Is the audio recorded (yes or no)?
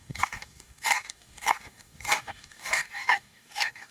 no